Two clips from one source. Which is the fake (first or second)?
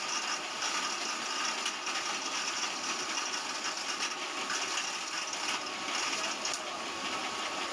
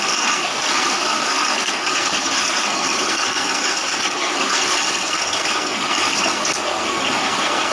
second